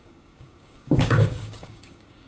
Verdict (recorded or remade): remade